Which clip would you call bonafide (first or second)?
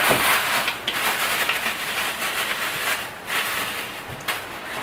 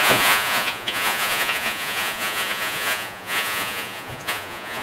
first